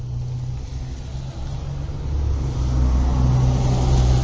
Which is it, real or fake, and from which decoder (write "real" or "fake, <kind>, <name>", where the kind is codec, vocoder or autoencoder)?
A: real